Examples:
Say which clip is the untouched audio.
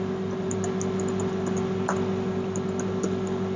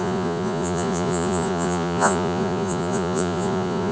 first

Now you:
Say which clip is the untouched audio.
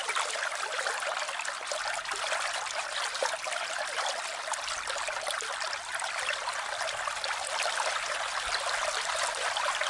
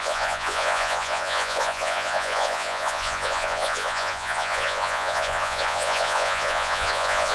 first